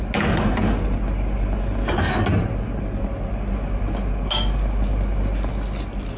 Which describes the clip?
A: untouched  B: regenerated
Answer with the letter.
A